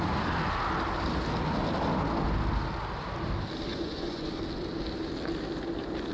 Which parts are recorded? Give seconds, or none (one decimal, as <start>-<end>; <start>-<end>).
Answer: 0.0-3.7; 4.3-6.1